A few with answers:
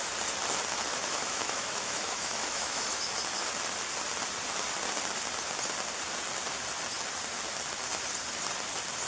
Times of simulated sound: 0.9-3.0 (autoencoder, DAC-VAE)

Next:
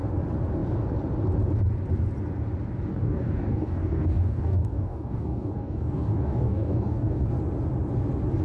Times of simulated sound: 2.9-7.3 (codec, DAC)

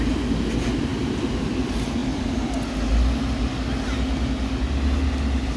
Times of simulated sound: none

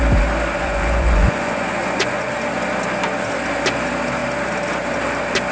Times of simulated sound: 0.6-2.3 (vocoder, Vocos)

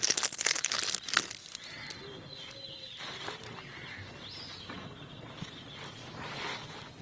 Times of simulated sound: none

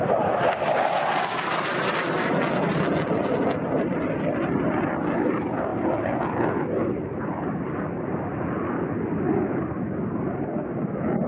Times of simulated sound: none

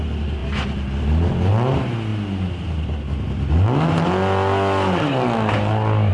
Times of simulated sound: none